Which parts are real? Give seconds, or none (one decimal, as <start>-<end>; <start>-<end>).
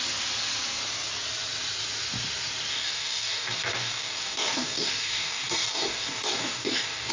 0.0-2.7